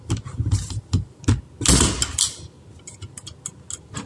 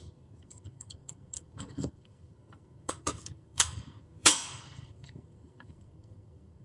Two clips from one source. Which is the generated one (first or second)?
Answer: second